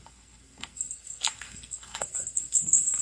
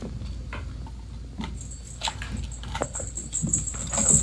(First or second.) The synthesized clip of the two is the first